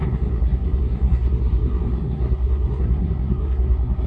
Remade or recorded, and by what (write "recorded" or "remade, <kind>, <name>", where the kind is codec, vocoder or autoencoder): remade, codec, SNAC